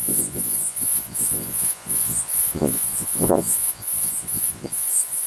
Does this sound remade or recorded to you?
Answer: remade